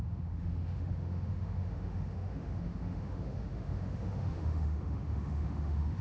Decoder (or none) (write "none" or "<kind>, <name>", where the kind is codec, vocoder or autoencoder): autoencoder, DAC-VAE